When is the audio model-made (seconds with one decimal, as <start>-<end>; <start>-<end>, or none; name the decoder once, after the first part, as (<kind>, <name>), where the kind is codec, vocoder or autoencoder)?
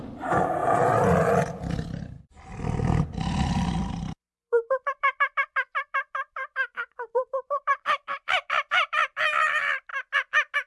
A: 0.0-0.6 (vocoder, BigVGAN v2); 1.7-9.9